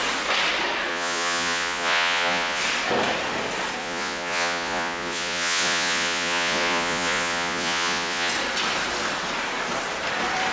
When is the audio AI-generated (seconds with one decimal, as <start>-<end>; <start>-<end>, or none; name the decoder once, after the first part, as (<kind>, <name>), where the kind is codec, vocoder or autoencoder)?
0.9-2.6 (vocoder, Vocos); 3.8-8.3